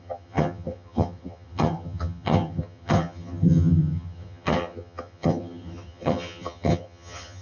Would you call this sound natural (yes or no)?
no